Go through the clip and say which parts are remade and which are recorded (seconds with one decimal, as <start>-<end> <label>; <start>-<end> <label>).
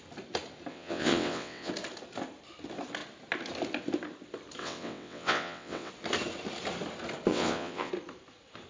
0.0-0.7 recorded; 0.7-1.7 remade; 1.7-4.6 recorded; 4.6-5.9 remade; 5.9-7.3 recorded; 7.3-7.9 remade; 7.9-8.7 recorded